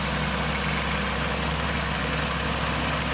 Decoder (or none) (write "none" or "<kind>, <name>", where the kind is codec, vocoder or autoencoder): none